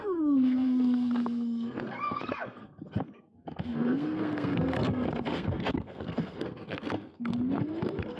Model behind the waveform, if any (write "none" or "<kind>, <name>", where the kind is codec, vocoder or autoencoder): codec, SNAC